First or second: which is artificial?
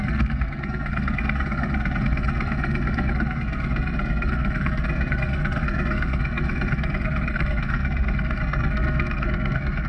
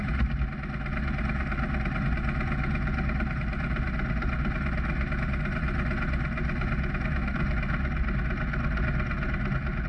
first